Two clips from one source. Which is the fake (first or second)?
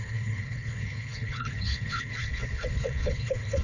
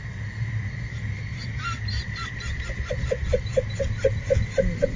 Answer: first